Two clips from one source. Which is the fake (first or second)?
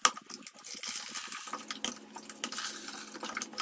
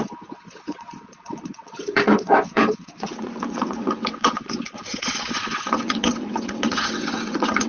second